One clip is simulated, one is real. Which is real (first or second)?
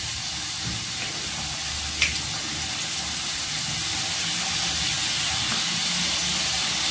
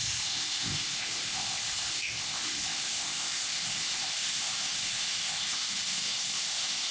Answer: first